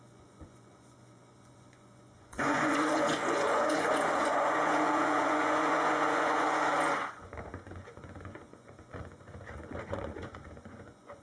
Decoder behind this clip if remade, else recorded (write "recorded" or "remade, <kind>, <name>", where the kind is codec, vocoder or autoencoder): remade, vocoder, Vocos